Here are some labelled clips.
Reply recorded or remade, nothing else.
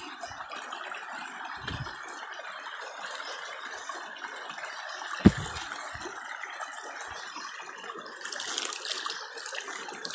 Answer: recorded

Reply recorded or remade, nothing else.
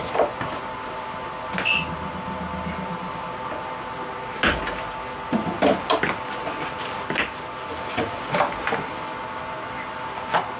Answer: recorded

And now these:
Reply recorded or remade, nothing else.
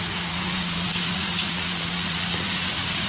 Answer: remade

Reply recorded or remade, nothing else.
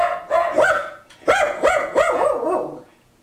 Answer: remade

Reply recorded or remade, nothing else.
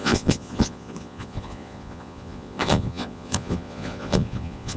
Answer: remade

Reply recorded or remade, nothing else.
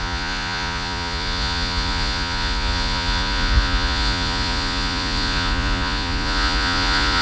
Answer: remade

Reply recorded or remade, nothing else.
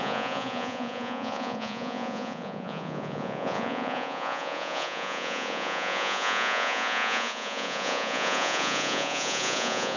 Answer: remade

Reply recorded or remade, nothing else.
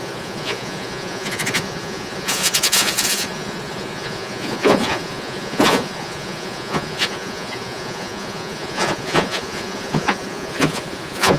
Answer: remade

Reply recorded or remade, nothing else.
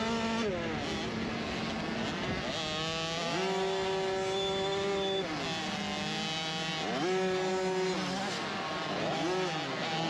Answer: recorded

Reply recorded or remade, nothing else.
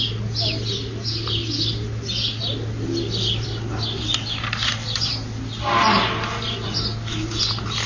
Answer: recorded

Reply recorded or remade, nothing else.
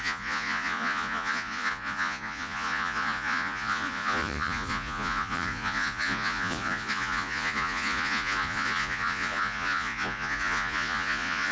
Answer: remade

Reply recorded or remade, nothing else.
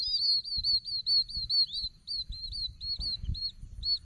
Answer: recorded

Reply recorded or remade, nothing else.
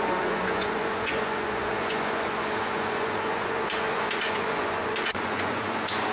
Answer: remade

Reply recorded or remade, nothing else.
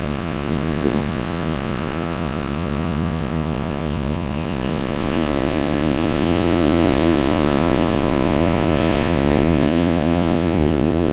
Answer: remade